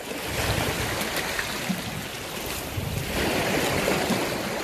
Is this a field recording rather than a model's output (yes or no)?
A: yes